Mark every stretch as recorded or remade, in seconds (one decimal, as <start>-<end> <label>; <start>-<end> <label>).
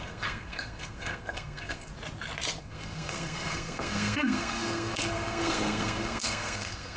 0.0-1.9 remade; 1.9-2.6 recorded; 2.6-7.0 remade